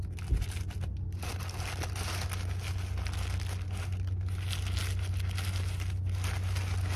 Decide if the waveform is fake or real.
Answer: real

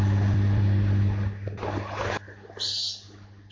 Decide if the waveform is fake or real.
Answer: real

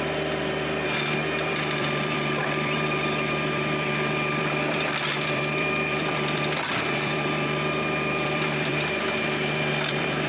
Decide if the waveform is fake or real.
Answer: fake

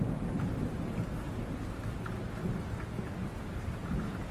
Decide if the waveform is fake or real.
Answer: real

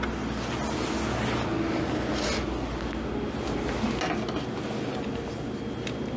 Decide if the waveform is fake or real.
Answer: real